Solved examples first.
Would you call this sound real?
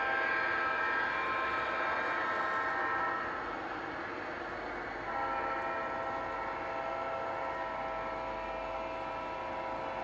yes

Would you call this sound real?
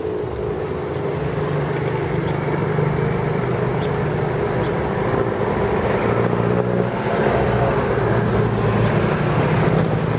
yes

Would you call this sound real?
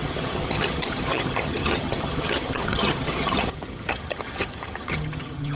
no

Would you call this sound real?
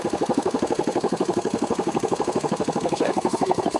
no